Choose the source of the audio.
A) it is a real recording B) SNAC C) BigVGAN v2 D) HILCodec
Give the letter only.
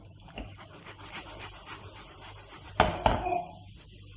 A